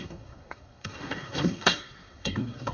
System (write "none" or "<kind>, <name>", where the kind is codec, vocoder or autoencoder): codec, SNAC